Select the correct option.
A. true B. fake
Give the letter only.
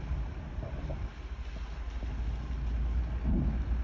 A